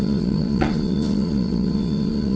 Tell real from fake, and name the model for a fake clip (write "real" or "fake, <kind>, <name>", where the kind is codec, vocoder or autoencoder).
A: fake, vocoder, Vocos